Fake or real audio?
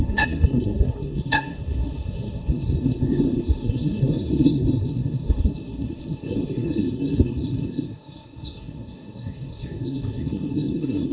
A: fake